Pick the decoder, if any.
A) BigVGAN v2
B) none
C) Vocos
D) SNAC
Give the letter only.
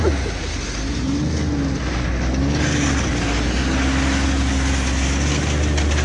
B